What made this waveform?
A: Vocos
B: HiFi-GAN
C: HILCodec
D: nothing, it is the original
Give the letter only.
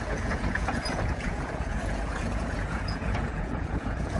A